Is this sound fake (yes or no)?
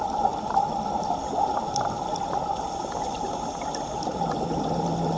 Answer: no